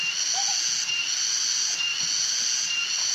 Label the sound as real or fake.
fake